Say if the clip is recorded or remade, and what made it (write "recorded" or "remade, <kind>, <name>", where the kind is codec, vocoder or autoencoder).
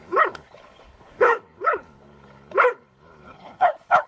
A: remade, codec, HILCodec